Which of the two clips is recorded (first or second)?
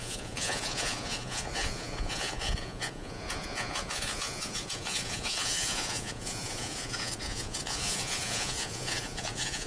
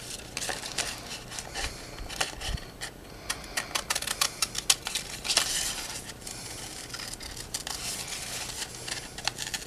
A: second